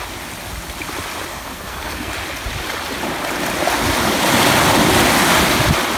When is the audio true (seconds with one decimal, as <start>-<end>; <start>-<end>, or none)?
0.0-1.3; 2.1-6.0